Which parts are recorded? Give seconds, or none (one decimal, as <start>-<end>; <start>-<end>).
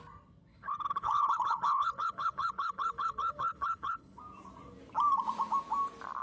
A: 0.0-0.5; 4.2-6.2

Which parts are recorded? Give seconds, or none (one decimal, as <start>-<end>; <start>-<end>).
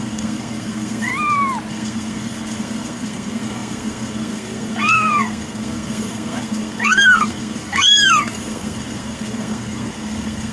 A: 1.1-1.7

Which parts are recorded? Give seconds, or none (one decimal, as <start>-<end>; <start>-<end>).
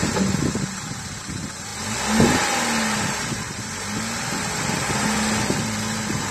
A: 0.0-6.3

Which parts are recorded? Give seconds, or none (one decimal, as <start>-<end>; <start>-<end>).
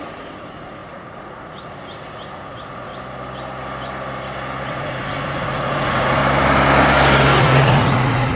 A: 2.9-4.7; 6.2-7.4